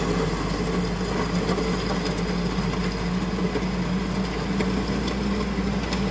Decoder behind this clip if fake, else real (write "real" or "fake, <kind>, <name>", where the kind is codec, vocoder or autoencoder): real